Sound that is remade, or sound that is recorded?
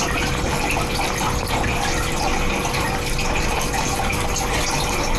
recorded